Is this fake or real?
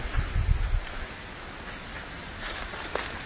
real